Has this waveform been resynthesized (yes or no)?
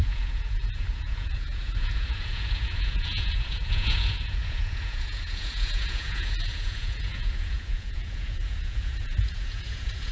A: yes